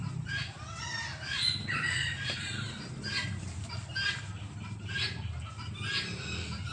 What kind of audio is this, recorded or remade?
recorded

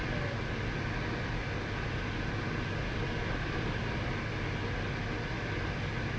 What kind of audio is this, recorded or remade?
recorded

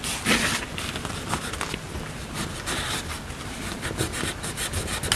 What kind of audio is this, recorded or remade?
recorded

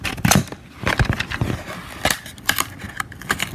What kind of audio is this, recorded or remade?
recorded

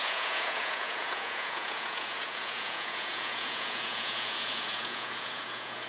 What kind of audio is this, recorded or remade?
remade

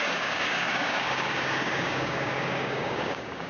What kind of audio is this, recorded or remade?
remade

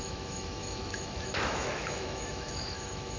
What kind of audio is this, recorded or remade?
remade